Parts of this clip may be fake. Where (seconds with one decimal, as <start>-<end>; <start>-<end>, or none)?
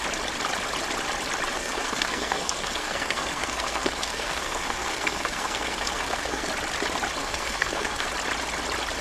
1.5-6.5; 7.2-8.1